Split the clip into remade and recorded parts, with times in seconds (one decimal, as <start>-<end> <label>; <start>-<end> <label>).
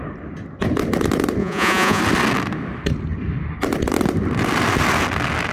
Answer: 0.0-1.4 recorded; 1.4-2.0 remade; 2.0-5.5 recorded